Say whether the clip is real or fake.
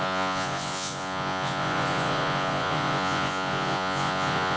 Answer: fake